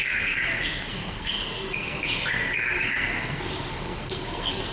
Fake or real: fake